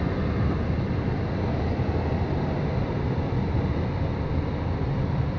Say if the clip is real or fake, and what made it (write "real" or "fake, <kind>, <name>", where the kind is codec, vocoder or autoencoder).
real